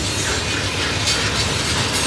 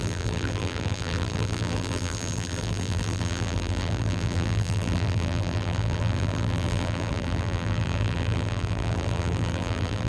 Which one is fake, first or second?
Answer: second